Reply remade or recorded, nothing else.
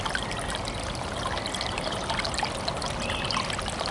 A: recorded